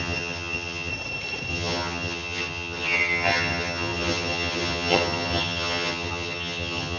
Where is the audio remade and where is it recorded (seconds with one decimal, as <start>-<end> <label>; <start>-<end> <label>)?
0.0-0.9 remade; 0.9-1.5 recorded; 1.5-7.0 remade